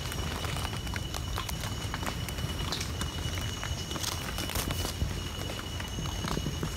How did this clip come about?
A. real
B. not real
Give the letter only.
A